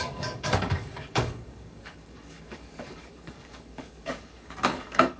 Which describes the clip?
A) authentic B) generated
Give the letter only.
B